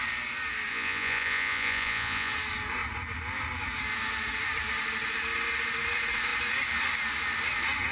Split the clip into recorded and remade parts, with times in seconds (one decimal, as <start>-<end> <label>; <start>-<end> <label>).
0.0-0.7 recorded; 0.7-2.3 remade; 2.3-7.9 recorded